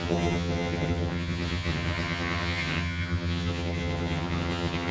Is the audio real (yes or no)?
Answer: no